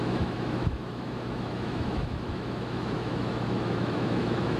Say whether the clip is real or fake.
fake